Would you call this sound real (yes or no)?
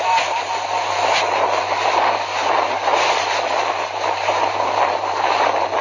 no